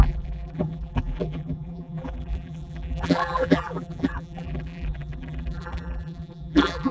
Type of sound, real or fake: fake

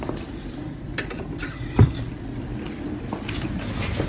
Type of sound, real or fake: real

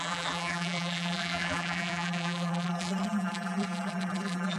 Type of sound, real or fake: fake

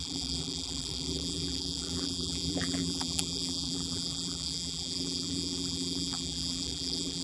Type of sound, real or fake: fake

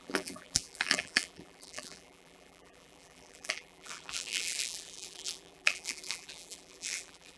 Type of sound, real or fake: fake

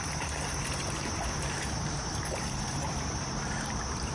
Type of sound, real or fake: fake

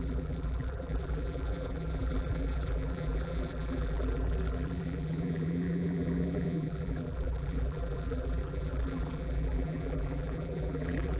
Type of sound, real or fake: fake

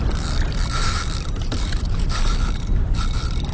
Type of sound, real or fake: fake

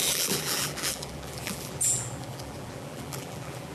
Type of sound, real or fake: fake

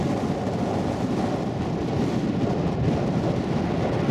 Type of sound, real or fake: real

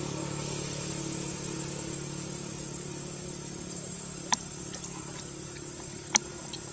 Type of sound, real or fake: real